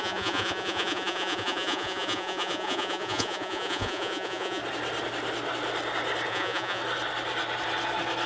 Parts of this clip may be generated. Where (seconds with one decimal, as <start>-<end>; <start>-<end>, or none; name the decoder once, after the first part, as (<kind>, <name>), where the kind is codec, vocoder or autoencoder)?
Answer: 0.0-4.6 (vocoder, Vocos); 6.3-6.8